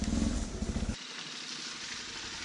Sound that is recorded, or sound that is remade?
recorded